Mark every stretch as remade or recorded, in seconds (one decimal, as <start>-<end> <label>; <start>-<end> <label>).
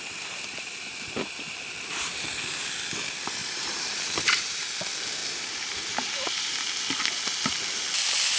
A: 0.0-3.4 recorded; 3.4-4.6 remade; 4.6-5.2 recorded; 5.2-6.6 remade; 6.6-8.4 recorded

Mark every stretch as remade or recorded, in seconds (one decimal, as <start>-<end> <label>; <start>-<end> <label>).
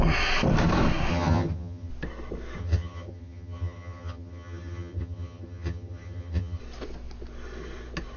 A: 0.0-1.1 recorded; 1.1-1.9 remade; 1.9-2.6 recorded; 2.6-6.6 remade; 6.6-8.2 recorded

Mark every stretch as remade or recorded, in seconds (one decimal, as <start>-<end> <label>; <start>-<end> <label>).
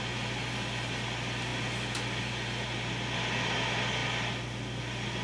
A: 0.0-5.2 recorded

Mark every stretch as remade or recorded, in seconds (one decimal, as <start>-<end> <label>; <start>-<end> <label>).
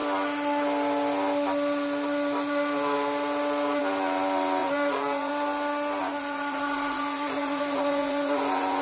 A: 0.0-4.6 recorded; 4.6-5.3 remade; 5.3-6.0 recorded; 6.0-8.8 remade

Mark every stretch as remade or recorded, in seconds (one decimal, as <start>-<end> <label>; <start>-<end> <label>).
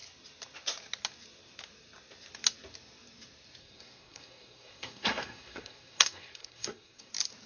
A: 0.0-3.6 recorded; 3.6-7.1 remade; 7.1-7.5 recorded